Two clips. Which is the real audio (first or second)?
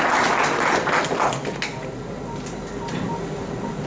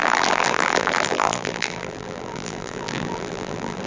first